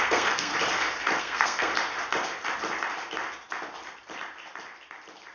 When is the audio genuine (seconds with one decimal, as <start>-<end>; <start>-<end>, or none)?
0.5-1.2; 1.7-5.3